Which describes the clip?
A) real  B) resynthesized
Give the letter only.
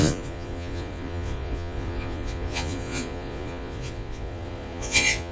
B